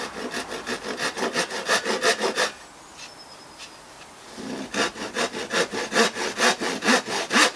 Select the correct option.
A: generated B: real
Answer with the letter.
B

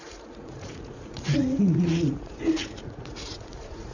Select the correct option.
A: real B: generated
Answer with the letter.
B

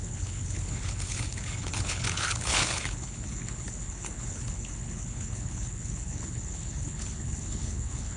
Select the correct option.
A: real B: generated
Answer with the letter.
B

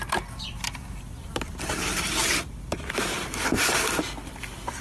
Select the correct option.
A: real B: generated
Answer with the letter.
B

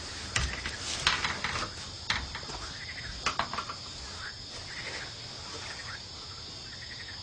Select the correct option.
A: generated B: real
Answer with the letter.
B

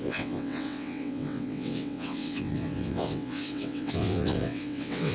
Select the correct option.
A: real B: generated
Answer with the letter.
B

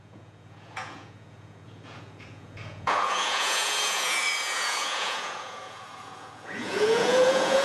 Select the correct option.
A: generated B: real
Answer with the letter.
A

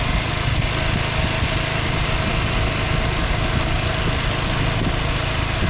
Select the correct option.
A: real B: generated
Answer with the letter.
A